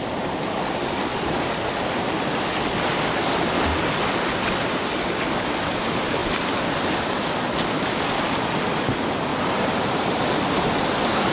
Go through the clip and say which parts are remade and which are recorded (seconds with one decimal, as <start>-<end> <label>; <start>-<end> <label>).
0.0-1.1 recorded; 1.1-1.6 remade; 1.6-9.3 recorded; 9.3-10.2 remade; 10.2-11.3 recorded